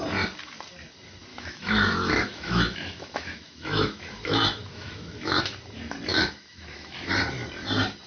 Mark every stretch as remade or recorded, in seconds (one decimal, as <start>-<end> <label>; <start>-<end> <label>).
0.0-1.3 recorded; 1.3-5.4 remade; 5.4-6.1 recorded; 6.1-7.1 remade; 7.1-8.1 recorded